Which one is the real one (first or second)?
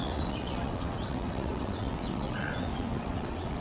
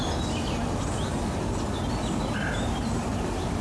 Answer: second